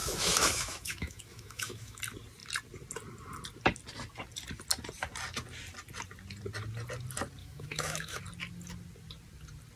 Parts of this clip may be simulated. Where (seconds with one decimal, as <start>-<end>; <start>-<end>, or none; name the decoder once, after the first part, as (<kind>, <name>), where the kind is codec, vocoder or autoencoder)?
0.0-2.0 (autoencoder, DAC-VAE); 7.4-8.2